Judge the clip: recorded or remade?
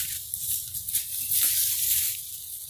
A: recorded